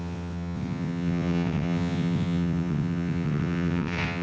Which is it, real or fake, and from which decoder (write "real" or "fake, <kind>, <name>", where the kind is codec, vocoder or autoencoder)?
fake, vocoder, WaveNeXt